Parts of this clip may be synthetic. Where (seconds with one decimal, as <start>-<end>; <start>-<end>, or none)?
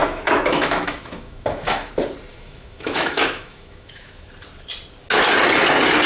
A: 0.0-1.9; 2.3-4.3